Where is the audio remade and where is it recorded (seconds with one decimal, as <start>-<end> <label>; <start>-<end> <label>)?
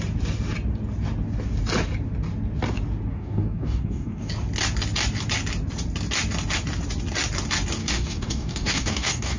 0.0-3.1 recorded; 3.1-4.3 remade; 4.3-7.8 recorded; 7.8-9.4 remade